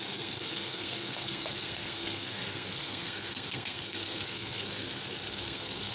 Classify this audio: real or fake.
fake